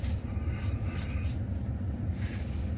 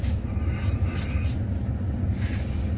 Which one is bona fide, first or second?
second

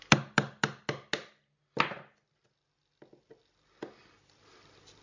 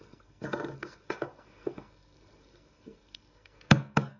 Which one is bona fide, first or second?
first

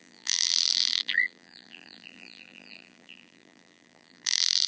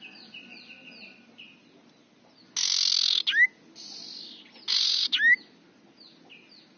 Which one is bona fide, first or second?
second